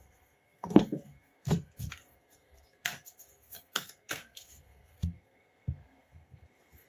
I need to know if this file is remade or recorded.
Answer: remade